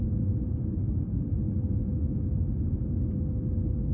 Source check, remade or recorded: recorded